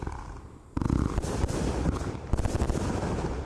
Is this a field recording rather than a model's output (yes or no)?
yes